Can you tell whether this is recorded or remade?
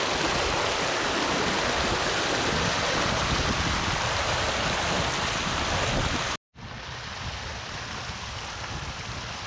recorded